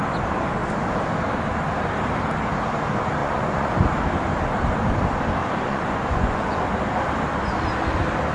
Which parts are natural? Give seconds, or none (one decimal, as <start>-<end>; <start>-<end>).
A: 0.0-3.2; 3.7-5.4; 6.6-8.3